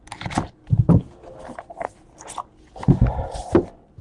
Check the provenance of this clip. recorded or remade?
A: recorded